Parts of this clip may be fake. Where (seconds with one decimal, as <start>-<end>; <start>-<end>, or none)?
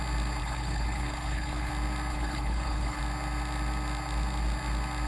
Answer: 0.4-1.7; 2.1-3.0